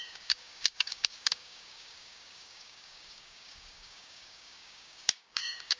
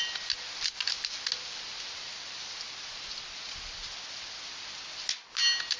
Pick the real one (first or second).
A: second